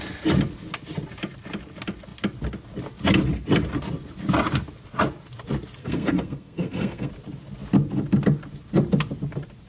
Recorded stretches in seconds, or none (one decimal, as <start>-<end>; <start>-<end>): 0.0-5.8; 7.1-9.7